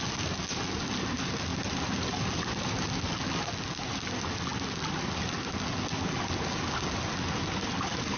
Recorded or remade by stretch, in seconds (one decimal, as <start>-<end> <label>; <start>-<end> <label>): 0.0-8.2 recorded